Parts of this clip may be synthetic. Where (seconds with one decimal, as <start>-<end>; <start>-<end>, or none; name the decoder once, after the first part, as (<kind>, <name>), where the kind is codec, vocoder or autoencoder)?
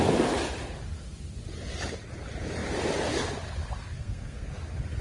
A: 3.9-4.5 (codec, SNAC)